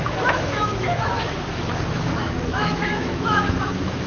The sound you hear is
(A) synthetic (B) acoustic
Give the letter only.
A